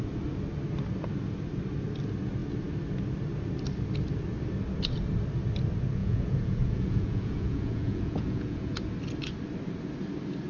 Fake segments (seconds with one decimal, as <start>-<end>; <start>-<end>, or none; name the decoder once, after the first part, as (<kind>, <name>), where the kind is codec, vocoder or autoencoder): 6.0-8.8 (vocoder, Vocos)